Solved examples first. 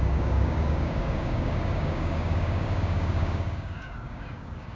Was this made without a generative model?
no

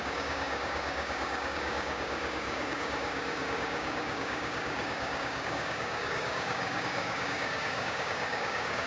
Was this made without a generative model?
no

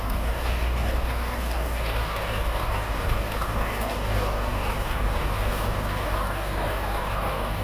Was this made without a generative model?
no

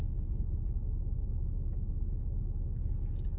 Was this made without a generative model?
yes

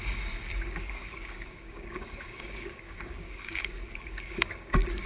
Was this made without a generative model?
no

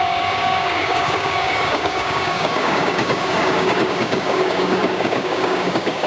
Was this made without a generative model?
no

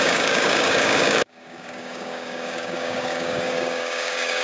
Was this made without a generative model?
no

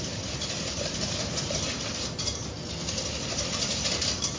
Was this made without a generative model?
yes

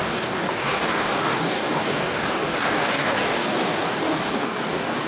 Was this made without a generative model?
no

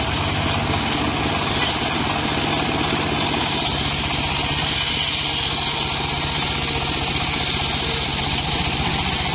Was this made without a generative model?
yes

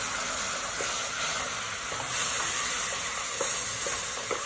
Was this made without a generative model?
yes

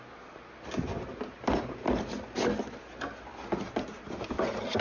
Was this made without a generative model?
yes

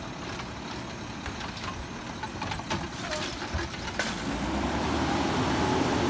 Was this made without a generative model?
yes